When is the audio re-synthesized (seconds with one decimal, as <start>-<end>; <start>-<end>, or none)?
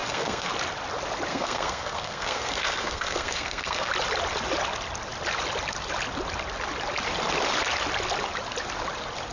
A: 0.0-0.5; 1.3-3.9